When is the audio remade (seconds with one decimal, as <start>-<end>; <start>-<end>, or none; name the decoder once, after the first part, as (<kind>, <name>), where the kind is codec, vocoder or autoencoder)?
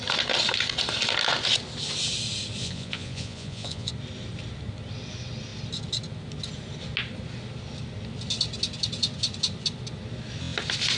2.6-3.9 (vocoder, Vocos)